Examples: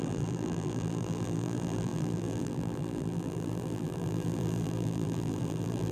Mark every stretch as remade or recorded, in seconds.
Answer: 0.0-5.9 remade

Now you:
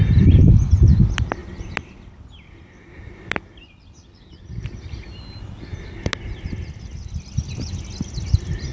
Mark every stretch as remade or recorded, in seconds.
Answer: 0.0-8.7 recorded

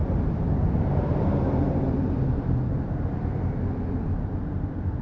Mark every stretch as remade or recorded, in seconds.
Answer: 0.0-2.9 remade; 2.9-5.0 recorded